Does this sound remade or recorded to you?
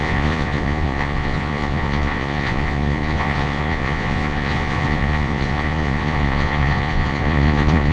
remade